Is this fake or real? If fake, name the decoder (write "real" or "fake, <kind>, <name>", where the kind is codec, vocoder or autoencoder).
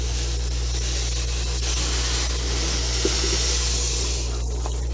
real